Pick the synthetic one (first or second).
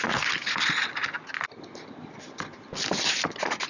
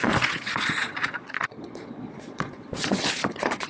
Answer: second